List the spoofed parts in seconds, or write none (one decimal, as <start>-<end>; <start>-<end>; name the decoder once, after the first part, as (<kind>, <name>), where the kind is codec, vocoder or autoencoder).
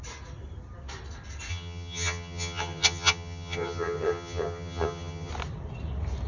1.5-5.3 (vocoder, HiFi-GAN)